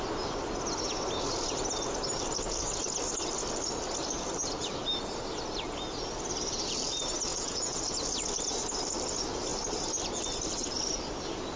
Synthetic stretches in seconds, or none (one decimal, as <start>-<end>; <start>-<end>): 7.3-7.8